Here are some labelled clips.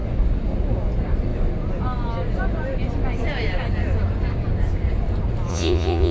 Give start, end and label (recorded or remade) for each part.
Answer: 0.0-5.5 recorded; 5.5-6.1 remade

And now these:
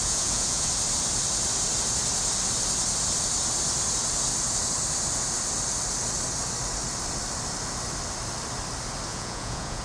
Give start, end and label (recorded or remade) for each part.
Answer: 0.0-0.7 remade; 0.7-9.1 recorded; 9.1-9.8 remade

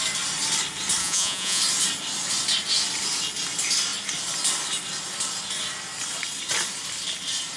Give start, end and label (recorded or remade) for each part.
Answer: 0.0-1.0 recorded; 1.0-1.6 remade; 1.6-7.6 recorded